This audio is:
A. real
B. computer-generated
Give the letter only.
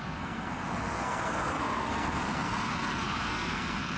B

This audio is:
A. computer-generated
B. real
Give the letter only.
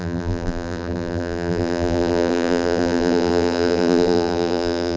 A